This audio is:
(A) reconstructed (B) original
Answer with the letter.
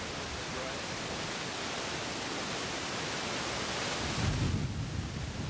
B